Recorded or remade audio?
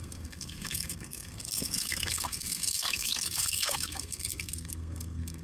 remade